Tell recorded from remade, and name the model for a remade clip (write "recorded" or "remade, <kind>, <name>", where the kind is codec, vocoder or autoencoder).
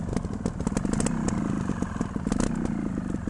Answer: recorded